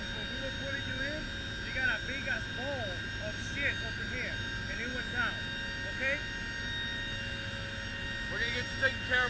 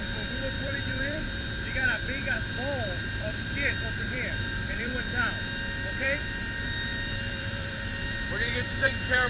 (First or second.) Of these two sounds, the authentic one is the first